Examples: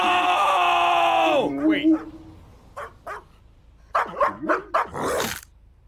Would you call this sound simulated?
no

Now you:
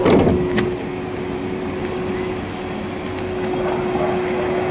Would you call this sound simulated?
no